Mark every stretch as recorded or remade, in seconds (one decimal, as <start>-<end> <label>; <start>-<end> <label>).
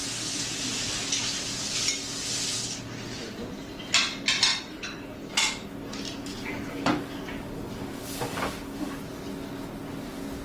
0.0-6.3 recorded; 6.3-8.9 remade; 8.9-10.4 recorded